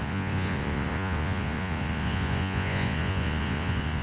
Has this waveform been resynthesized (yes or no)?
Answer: yes